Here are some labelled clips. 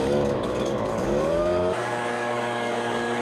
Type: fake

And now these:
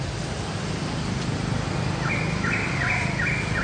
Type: real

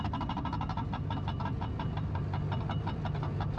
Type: real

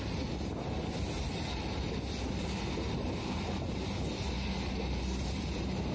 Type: real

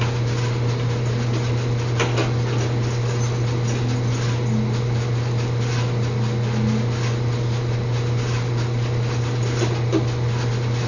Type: real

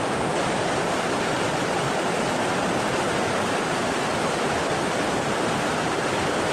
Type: real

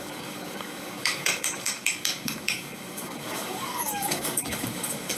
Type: fake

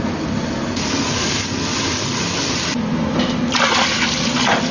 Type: real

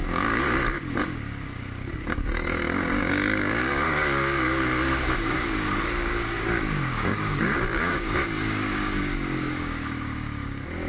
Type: fake